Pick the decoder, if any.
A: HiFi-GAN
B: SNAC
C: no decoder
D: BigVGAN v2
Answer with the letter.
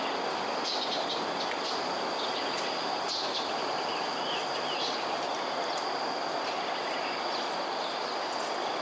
C